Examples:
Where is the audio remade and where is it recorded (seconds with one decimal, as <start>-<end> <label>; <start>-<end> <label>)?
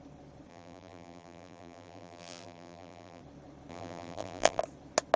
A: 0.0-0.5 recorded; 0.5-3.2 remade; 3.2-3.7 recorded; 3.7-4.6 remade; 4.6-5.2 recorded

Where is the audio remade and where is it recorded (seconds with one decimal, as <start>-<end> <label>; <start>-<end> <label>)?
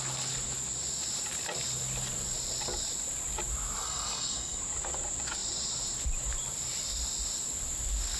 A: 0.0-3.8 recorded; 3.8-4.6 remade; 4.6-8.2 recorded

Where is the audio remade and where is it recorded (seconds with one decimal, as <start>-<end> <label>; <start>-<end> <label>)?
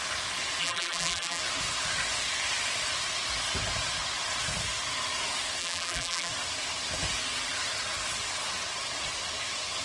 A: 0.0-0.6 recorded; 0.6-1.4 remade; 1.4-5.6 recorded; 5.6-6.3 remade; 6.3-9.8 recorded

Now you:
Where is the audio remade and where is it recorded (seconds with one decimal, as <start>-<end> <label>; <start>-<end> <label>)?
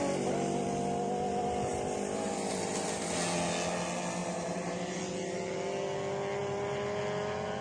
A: 0.0-4.2 recorded; 4.2-5.0 remade; 5.0-6.4 recorded; 6.4-7.0 remade; 7.0-7.6 recorded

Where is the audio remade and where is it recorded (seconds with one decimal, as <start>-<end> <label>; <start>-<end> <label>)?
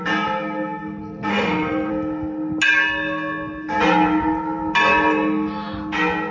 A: 0.0-1.3 recorded; 1.3-1.9 remade; 1.9-6.3 recorded